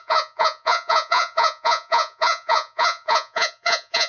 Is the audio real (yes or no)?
no